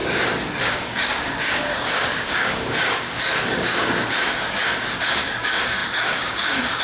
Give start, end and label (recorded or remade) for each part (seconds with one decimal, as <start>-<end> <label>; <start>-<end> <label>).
0.0-0.6 recorded; 0.6-6.8 remade